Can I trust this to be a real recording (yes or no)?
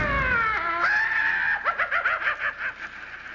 yes